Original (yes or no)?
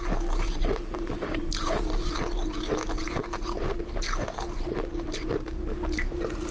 no